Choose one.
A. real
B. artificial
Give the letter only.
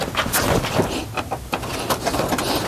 A